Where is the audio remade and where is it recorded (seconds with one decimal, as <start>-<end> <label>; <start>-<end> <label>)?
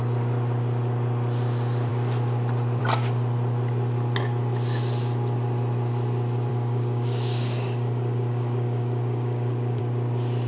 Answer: 0.0-6.5 recorded; 6.5-9.8 remade; 9.8-10.5 recorded